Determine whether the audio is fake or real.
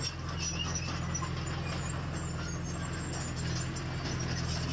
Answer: real